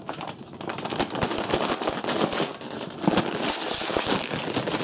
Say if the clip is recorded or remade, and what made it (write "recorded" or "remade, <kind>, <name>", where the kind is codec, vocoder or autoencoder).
recorded